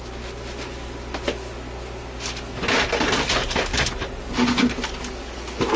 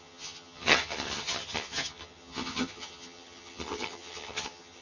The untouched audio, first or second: first